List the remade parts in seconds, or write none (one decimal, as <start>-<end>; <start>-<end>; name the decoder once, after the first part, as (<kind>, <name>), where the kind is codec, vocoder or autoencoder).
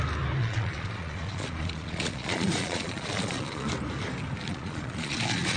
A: 0.4-3.7 (vocoder, Vocos); 4.5-5.6